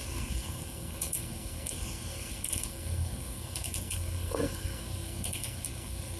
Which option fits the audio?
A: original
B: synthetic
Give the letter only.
B